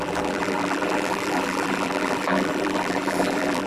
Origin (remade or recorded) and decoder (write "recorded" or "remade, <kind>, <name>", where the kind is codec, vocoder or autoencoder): remade, vocoder, BigVGAN v2